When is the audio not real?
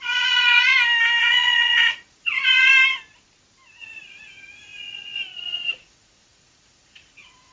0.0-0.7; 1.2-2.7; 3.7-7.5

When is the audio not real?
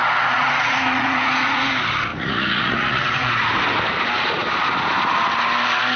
0.0-1.7; 2.1-3.3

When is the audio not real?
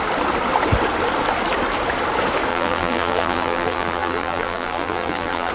2.5-5.5